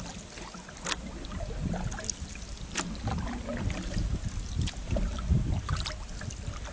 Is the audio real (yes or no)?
yes